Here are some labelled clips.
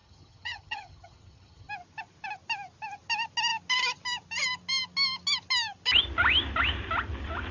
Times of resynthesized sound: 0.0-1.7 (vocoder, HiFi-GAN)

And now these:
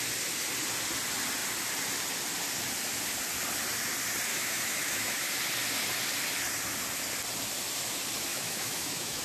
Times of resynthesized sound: 4.3-5.3 (autoencoder, DAC-VAE); 8.3-9.2